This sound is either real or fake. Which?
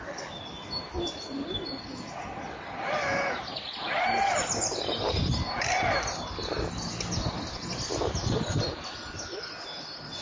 real